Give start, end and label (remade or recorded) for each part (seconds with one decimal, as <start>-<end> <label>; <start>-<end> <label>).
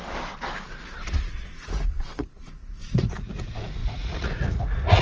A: 0.0-1.2 recorded; 1.2-5.0 remade